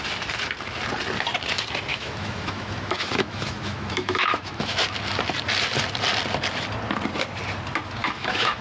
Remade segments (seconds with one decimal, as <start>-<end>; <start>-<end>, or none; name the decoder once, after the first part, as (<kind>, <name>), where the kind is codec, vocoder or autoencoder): 1.9-4.8 (autoencoder, DAC-VAE); 8.0-8.6